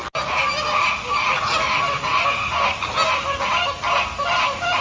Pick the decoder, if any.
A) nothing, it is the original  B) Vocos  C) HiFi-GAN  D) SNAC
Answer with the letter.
A